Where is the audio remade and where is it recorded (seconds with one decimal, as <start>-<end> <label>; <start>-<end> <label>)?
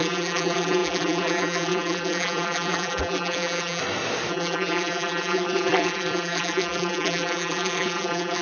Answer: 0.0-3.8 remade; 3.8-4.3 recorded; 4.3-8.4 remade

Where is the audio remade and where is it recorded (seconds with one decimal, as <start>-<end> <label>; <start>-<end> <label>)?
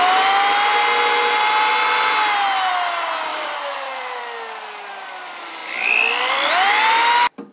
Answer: 0.0-3.3 recorded; 3.3-4.2 remade; 4.2-7.5 recorded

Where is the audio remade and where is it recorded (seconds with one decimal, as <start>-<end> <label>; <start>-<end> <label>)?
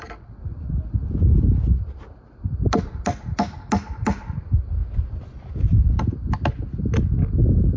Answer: 0.0-4.8 recorded; 4.8-5.8 remade; 5.8-7.8 recorded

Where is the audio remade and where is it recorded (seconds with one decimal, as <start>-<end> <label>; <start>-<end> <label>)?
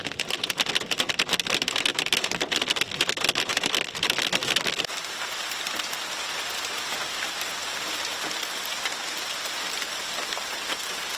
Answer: 0.0-0.7 remade; 0.7-1.9 recorded; 1.9-3.2 remade; 3.2-11.2 recorded